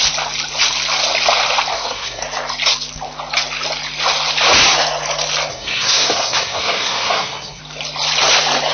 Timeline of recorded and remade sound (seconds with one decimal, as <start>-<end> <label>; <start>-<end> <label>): 0.0-1.7 recorded; 1.7-2.2 remade; 2.2-5.5 recorded; 5.5-7.6 remade; 7.6-8.7 recorded